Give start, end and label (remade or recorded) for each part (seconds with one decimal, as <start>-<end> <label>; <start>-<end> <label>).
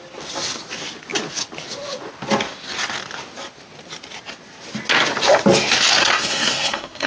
0.0-6.0 recorded; 6.0-7.1 remade